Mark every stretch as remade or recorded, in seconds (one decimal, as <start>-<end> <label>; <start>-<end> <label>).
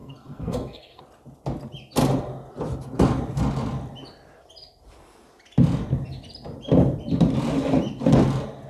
0.0-1.0 remade; 1.0-8.7 recorded